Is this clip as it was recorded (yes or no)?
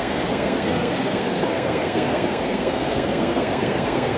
no